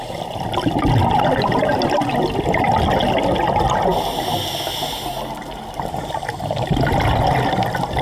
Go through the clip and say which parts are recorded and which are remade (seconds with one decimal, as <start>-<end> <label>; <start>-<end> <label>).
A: 0.0-8.0 recorded

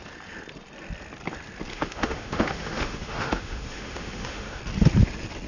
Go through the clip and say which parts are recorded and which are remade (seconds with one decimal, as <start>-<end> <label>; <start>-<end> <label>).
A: 0.0-1.7 recorded; 1.7-4.6 remade; 4.6-5.5 recorded